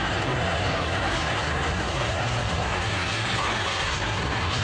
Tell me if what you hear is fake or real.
fake